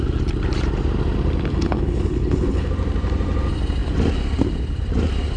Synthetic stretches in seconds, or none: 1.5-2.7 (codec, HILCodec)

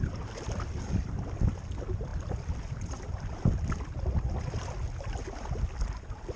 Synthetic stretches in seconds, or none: none